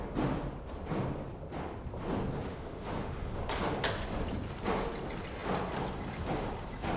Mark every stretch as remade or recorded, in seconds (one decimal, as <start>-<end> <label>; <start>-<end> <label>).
0.0-2.5 recorded; 2.5-3.3 remade; 3.3-7.0 recorded